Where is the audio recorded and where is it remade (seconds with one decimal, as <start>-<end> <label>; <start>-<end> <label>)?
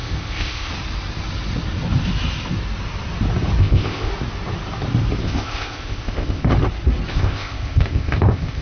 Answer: 0.0-0.7 remade; 0.7-3.6 recorded; 3.6-4.1 remade; 4.1-5.2 recorded; 5.2-6.5 remade; 6.5-7.1 recorded; 7.1-8.6 remade